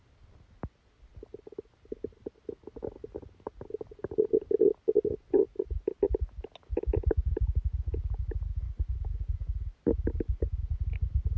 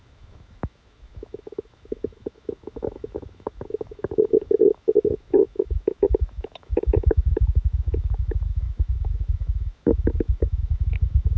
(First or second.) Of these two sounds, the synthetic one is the second